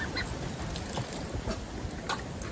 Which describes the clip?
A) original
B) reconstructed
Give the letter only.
A